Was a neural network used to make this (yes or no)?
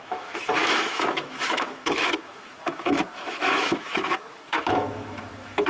yes